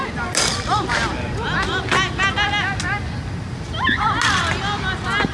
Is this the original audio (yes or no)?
yes